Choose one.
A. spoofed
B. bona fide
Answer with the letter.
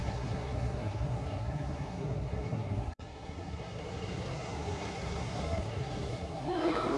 A